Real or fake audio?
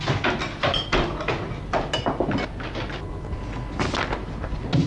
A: real